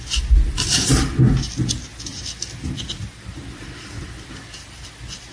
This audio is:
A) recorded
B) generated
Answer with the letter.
A